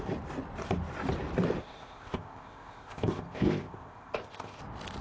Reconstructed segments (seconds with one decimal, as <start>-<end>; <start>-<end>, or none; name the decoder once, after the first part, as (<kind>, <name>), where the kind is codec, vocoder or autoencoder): 1.6-4.6 (codec, ZipCodec)